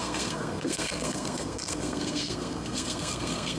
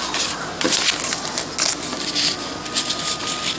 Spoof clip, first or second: first